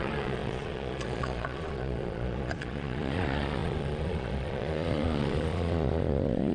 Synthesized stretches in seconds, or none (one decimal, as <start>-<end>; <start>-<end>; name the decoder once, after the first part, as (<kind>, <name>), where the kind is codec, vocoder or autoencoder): 0.0-6.5 (vocoder, Vocos)